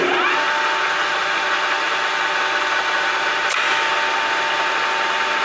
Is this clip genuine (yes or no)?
yes